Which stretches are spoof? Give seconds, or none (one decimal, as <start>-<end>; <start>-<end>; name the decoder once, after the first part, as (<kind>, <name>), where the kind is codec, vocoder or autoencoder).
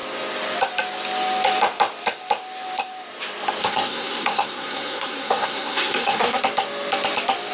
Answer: 3.6-6.4 (codec, SNAC)